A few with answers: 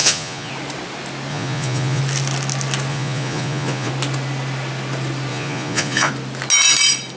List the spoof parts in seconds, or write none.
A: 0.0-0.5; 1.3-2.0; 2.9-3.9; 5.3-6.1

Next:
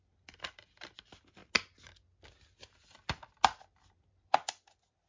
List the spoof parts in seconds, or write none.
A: 0.0-1.4; 3.6-5.1